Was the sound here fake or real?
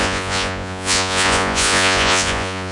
fake